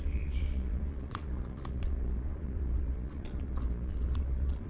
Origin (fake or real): fake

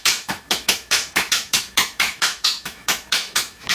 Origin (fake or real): fake